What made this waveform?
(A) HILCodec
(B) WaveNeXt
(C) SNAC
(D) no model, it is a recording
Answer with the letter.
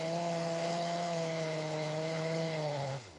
A